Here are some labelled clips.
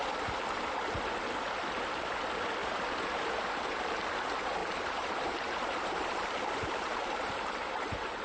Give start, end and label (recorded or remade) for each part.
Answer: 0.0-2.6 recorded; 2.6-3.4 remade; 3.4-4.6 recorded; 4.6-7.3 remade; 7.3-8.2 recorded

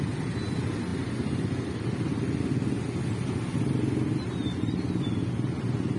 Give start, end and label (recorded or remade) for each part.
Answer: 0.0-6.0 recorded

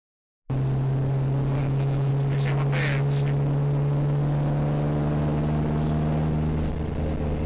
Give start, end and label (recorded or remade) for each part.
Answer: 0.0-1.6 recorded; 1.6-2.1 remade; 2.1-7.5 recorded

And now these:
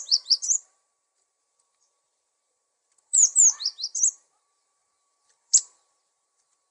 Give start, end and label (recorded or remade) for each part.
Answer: 0.0-3.4 remade; 3.4-4.1 recorded; 4.1-6.7 remade

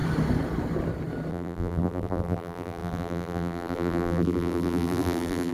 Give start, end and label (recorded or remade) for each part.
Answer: 0.0-1.3 recorded; 1.3-5.5 remade

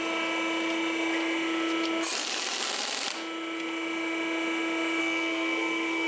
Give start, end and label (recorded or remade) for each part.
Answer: 0.0-5.0 recorded; 5.0-6.1 remade

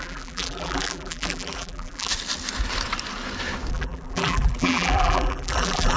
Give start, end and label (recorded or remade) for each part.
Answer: 0.0-2.1 remade; 2.1-3.7 recorded; 3.7-6.0 remade

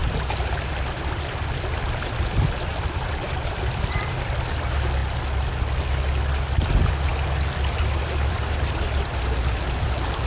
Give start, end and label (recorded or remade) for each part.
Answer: 0.0-0.5 recorded; 0.5-5.0 remade; 5.0-6.6 recorded; 6.6-7.1 remade; 7.1-7.7 recorded; 7.7-10.3 remade